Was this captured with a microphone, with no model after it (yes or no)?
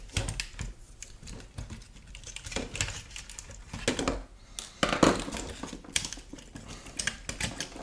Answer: yes